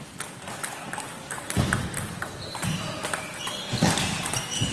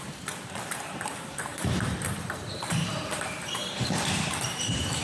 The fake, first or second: second